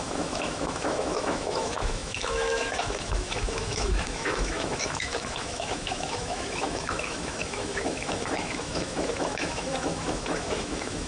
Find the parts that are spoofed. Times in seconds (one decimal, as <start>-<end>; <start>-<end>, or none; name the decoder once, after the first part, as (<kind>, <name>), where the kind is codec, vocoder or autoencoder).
0.0-11.1 (autoencoder, DAC-VAE)